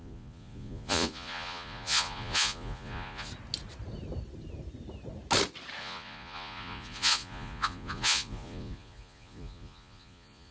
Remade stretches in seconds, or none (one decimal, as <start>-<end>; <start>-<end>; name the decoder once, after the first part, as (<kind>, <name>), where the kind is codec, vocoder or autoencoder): 0.0-3.3 (vocoder, Vocos); 5.8-10.5

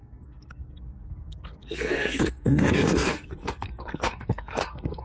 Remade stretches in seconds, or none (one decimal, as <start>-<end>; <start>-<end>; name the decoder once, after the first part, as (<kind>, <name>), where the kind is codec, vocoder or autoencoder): 0.0-5.0 (codec, SNAC)